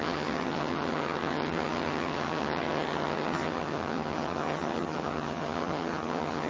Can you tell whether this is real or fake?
fake